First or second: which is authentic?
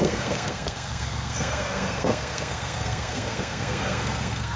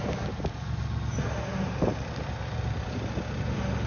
second